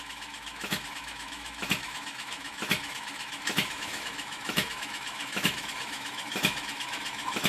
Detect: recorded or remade remade